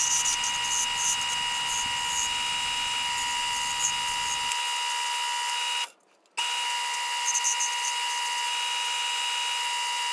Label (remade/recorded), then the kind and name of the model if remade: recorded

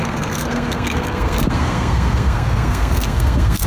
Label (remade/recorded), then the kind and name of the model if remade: remade, codec, SNAC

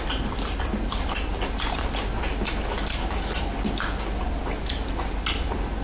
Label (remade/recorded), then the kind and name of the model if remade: recorded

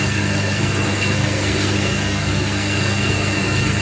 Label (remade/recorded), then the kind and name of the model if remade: remade, codec, SNAC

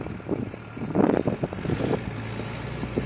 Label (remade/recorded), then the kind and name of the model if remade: recorded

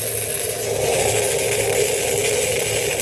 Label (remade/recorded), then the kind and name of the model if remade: recorded